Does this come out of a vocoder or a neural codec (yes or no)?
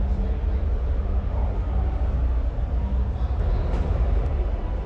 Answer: no